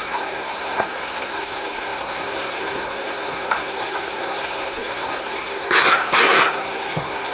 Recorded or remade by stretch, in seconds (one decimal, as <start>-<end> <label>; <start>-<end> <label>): 0.0-7.3 remade